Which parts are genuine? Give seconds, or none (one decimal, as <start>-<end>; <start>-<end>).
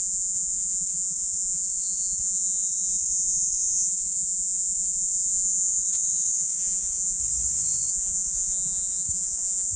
7.2-7.9